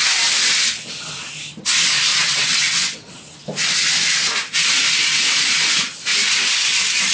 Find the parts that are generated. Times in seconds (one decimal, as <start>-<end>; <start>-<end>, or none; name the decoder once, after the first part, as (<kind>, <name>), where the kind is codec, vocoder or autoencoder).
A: 2.1-3.2 (vocoder, WaveNeXt)